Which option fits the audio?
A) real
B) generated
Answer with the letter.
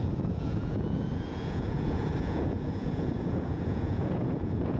B